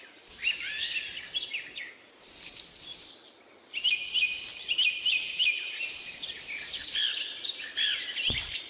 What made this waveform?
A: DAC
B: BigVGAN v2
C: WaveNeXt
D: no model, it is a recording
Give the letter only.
D